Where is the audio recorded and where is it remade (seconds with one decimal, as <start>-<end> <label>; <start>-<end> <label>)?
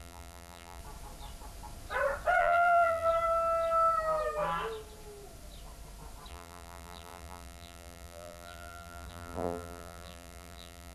0.0-0.8 remade; 0.8-2.4 recorded; 2.4-3.1 remade; 3.1-6.3 recorded; 6.3-10.9 remade